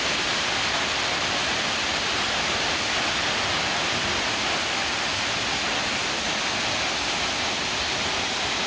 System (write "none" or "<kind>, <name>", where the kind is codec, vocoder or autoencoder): none